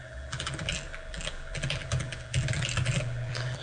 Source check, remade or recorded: remade